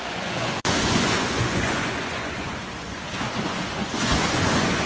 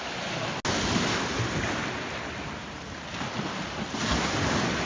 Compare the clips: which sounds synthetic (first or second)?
first